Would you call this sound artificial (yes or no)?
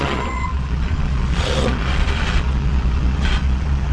yes